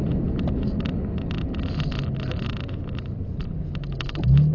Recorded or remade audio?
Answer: recorded